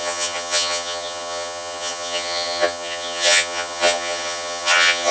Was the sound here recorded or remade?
remade